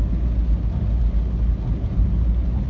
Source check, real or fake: real